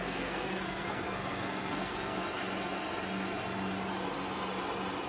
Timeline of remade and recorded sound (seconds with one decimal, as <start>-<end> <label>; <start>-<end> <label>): 0.0-2.2 remade; 2.2-5.1 recorded